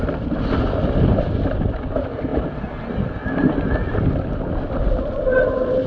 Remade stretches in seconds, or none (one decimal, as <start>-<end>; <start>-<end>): none